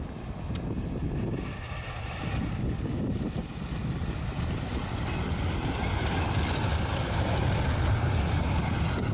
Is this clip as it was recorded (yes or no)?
yes